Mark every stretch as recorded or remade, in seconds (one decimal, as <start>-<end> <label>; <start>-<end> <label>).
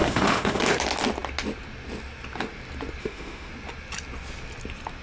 0.0-0.6 remade; 0.6-3.0 recorded; 3.0-3.5 remade; 3.5-5.0 recorded